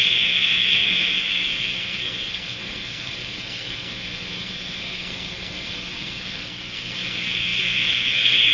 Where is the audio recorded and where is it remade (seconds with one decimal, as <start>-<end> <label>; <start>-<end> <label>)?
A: 0.0-8.5 remade